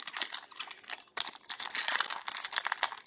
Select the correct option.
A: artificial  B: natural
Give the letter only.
B